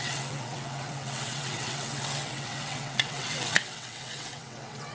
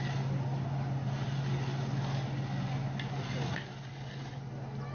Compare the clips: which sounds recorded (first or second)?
second